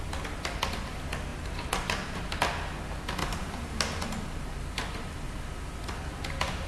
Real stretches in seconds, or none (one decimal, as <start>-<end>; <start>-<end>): 0.0-1.3; 2.2-3.2; 3.8-6.7